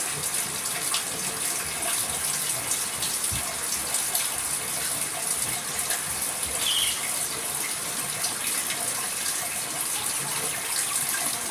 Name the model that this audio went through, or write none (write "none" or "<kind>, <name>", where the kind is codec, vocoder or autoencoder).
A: none